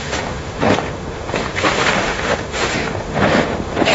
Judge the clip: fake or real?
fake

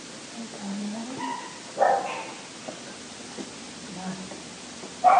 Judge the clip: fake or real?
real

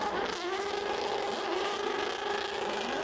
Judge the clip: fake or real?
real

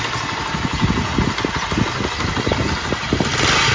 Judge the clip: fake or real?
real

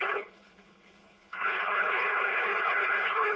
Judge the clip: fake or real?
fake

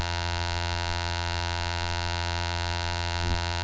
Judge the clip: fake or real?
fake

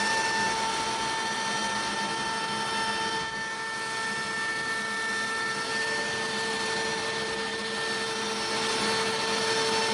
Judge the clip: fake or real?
real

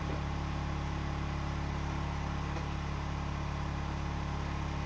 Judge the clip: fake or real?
real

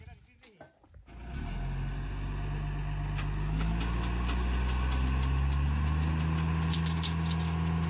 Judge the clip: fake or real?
real